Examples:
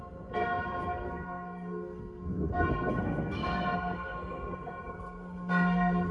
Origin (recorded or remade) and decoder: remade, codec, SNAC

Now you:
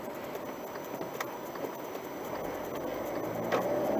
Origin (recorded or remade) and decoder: recorded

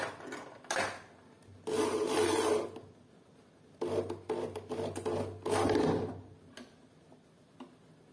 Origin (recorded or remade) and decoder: recorded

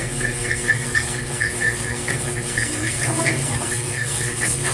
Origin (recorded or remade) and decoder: remade, codec, SNAC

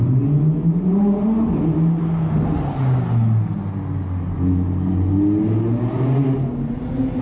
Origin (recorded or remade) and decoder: recorded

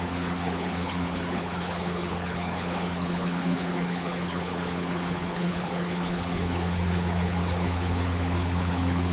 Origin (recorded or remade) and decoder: remade, codec, HILCodec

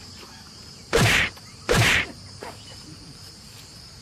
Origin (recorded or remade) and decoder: remade, vocoder, BigVGAN v2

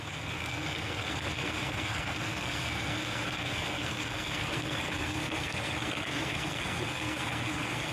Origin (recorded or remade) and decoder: remade, codec, SNAC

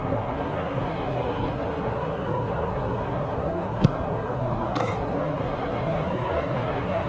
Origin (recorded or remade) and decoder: remade, codec, SNAC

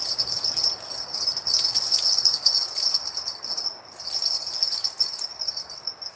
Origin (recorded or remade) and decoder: recorded